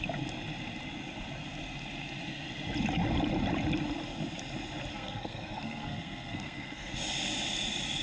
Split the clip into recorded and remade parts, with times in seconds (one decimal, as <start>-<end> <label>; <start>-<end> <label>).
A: 0.0-4.9 recorded; 4.9-6.9 remade; 6.9-8.0 recorded